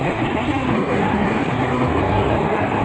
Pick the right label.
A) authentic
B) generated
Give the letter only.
B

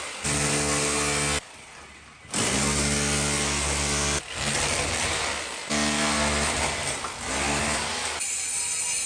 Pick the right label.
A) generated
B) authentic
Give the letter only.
B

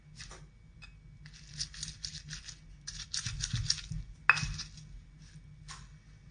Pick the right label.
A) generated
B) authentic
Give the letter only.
B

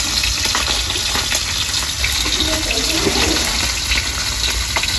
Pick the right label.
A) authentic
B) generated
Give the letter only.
A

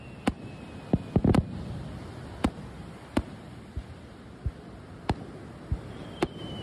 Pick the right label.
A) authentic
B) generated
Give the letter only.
A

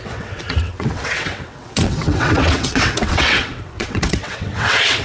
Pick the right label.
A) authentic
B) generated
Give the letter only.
B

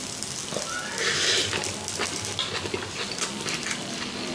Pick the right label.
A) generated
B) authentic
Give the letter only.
B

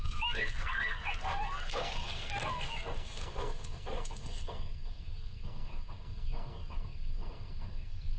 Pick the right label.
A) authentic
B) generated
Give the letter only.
B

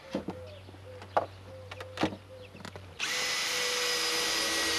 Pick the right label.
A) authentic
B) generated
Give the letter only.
A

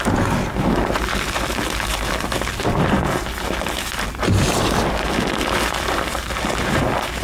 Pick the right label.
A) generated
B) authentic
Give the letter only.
B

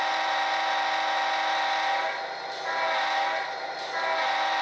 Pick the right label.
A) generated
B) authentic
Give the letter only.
B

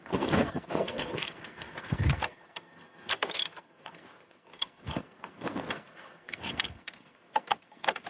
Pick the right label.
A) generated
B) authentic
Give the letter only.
A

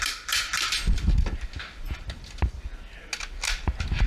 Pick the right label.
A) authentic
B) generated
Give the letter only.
A